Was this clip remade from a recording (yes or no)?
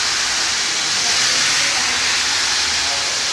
no